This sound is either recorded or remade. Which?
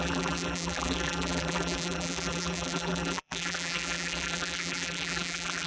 remade